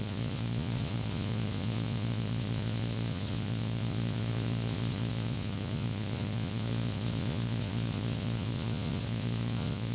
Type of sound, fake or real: fake